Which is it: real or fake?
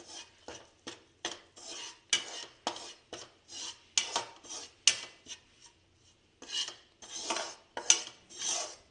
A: real